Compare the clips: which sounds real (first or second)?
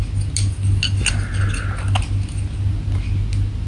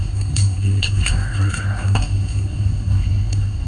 first